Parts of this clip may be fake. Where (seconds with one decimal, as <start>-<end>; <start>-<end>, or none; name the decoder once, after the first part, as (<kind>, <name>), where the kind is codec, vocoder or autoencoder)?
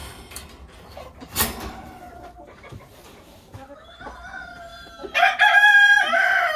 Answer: 0.0-4.0 (vocoder, BigVGAN v2)